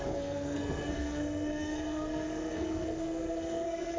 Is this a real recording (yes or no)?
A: no